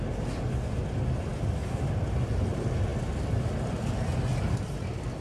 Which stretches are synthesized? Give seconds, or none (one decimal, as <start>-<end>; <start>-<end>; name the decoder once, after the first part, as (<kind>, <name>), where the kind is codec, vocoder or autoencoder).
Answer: none